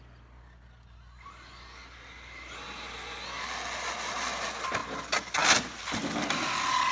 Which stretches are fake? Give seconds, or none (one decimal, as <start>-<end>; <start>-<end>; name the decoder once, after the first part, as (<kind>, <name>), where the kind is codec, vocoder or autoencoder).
none